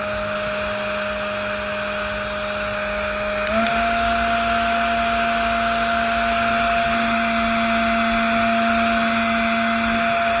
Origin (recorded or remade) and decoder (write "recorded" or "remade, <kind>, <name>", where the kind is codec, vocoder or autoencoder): recorded